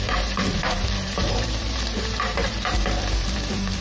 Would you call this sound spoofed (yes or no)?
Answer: yes